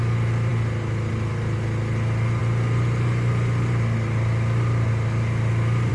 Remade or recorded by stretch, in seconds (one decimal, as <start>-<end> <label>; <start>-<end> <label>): 0.0-5.9 recorded